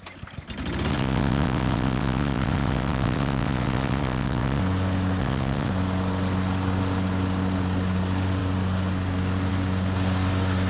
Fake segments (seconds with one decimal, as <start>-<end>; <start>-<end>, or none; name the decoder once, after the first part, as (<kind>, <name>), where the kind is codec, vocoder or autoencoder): 0.9-4.6 (vocoder, WaveNeXt); 5.2-5.7